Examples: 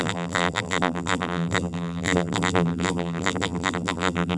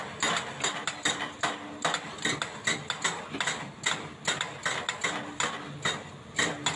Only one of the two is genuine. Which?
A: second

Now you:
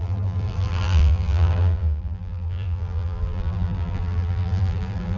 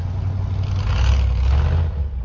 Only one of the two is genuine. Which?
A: second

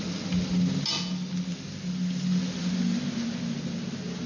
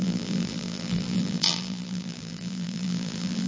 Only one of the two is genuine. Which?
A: first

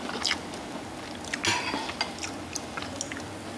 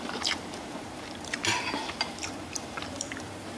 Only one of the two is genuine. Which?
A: first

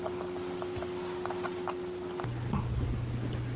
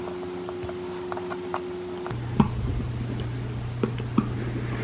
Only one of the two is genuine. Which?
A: first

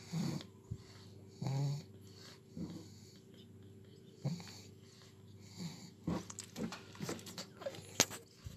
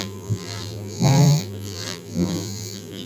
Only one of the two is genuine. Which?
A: first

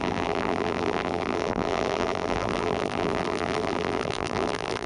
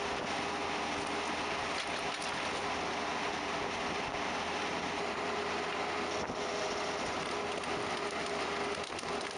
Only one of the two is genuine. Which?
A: second